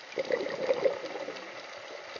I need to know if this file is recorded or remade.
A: recorded